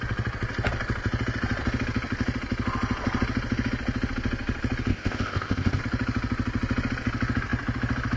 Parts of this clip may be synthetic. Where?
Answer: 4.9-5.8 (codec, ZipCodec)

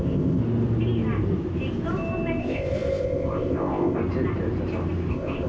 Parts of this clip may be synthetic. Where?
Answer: 0.0-0.4 (codec, ZipCodec); 2.4-4.0; 5.1-5.5